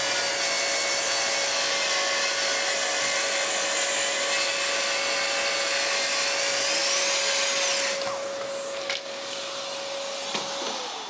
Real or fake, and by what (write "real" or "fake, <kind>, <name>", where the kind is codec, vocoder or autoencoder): real